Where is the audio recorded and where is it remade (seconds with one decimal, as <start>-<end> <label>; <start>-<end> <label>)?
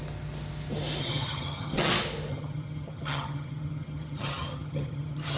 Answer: 0.0-1.0 recorded; 1.0-1.9 remade; 1.9-2.3 recorded; 2.3-5.4 remade